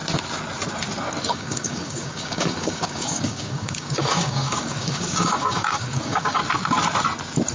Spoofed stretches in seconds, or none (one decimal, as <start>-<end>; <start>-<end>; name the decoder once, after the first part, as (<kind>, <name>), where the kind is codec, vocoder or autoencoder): 1.2-6.4 (codec, DAC)

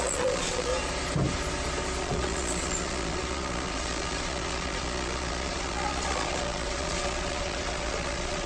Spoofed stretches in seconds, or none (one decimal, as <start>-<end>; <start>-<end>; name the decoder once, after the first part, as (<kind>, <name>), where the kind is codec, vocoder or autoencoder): 0.0-0.7 (vocoder, Vocos); 2.0-8.5

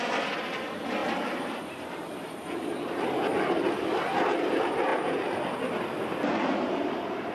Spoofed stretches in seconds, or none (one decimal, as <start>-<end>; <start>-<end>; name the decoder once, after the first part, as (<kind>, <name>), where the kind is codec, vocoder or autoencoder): 0.0-1.0 (vocoder, BigVGAN v2); 1.7-7.3

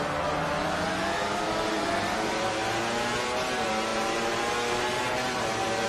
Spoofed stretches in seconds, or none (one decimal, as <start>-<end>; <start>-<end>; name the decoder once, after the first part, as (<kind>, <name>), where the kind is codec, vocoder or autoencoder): 3.9-4.4 (vocoder, BigVGAN v2)

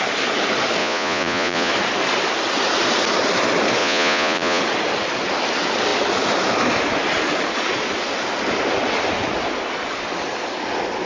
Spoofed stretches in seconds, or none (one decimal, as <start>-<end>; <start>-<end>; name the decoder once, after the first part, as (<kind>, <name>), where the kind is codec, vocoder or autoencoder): 0.8-1.7 (vocoder, Vocos); 3.8-4.6

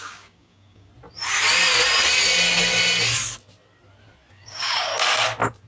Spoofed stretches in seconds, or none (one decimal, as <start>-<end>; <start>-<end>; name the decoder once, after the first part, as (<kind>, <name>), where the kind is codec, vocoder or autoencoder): 0.0-0.9 (codec, DAC); 4.3-4.9

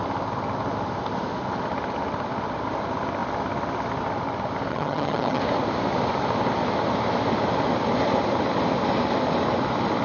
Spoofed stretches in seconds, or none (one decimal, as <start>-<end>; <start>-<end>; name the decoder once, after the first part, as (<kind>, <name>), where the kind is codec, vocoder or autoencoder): 4.7-5.4 (vocoder, HiFi-GAN)

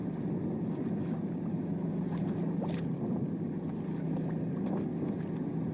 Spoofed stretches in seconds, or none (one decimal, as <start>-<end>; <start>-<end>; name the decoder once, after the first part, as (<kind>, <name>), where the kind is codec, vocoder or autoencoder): none